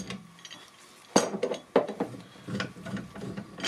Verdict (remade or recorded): recorded